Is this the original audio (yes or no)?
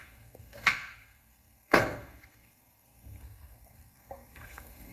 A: no